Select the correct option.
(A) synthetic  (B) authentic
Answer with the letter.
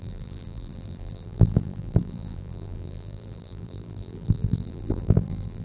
A